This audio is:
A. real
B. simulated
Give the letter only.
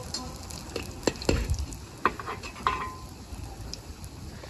A